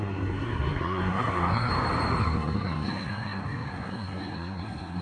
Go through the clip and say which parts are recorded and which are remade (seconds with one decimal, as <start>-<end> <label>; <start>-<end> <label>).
0.0-1.7 remade; 1.7-2.2 recorded; 2.2-5.0 remade